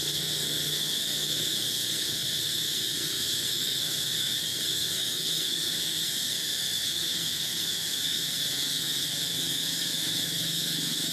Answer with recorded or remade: remade